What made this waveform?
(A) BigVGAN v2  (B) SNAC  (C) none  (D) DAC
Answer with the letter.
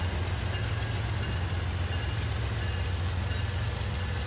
C